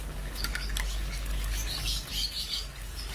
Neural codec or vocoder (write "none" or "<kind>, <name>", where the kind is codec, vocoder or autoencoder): codec, DAC